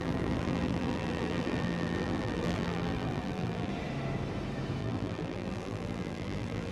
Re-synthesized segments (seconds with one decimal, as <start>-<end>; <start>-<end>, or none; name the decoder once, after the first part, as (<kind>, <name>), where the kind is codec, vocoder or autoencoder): 0.0-3.7 (vocoder, BigVGAN v2); 4.8-6.7